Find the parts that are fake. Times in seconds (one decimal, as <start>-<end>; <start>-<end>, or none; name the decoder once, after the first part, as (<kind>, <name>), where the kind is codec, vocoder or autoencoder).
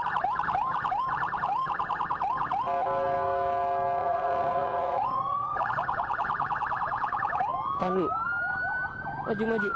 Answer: 4.0-5.7 (vocoder, Vocos)